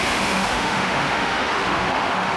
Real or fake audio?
fake